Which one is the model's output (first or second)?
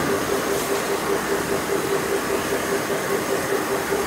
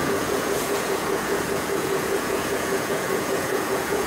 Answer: second